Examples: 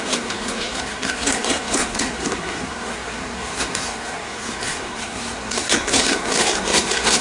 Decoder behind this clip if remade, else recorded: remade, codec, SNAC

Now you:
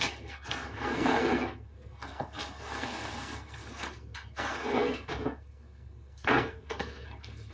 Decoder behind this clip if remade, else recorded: remade, codec, SNAC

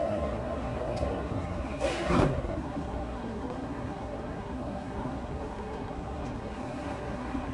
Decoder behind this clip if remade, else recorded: remade, codec, SNAC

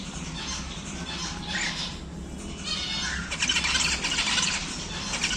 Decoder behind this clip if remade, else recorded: recorded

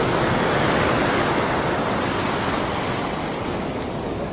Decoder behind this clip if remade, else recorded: recorded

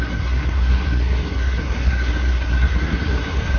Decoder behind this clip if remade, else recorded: remade, codec, SNAC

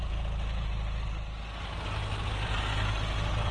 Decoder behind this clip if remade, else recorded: recorded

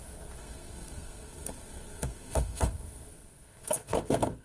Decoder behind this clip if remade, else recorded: remade, codec, SNAC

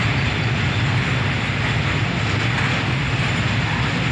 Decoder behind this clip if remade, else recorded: recorded